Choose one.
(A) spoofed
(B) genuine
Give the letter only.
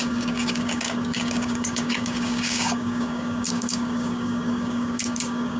A